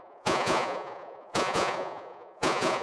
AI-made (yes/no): yes